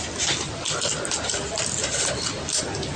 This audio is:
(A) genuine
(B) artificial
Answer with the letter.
A